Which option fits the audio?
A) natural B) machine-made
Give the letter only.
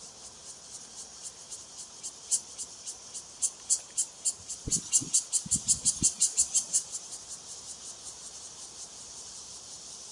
B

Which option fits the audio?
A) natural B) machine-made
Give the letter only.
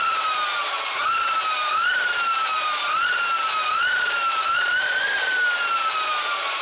A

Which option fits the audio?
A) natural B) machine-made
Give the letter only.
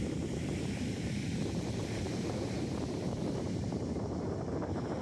B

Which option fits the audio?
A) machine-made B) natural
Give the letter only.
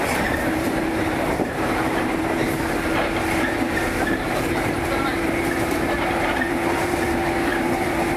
A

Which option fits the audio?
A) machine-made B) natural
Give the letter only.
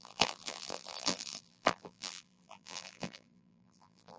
A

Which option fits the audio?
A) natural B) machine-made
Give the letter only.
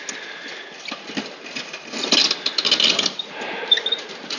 A